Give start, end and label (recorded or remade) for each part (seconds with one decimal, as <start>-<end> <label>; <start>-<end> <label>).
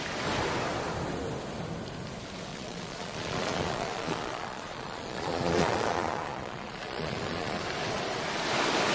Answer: 0.0-2.5 recorded; 2.5-7.6 remade; 7.6-8.9 recorded